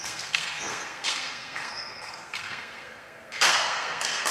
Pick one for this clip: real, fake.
fake